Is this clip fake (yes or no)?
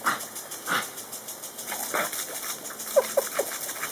no